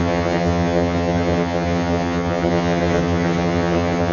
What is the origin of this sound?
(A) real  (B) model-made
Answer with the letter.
B